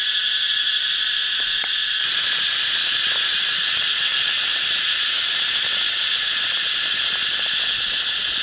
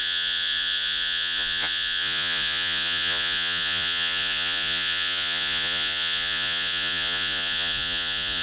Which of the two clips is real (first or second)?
first